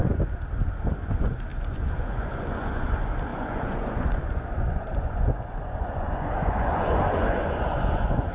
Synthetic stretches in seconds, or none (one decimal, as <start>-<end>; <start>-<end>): 1.0-8.3